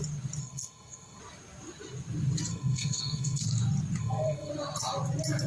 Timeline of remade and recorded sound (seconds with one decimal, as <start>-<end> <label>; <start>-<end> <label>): 0.0-0.4 recorded; 0.4-1.2 remade; 1.2-2.5 recorded; 2.5-3.4 remade; 3.4-4.0 recorded; 4.0-4.5 remade; 4.5-5.5 recorded